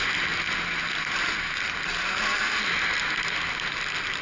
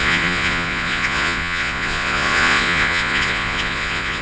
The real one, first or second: first